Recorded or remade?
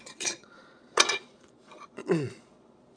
remade